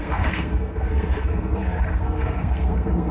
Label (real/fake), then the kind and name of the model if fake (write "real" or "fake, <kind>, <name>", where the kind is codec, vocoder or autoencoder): fake, codec, SNAC